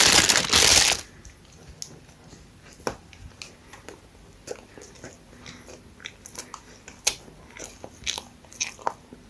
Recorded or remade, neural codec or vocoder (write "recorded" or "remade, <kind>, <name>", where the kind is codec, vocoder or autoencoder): recorded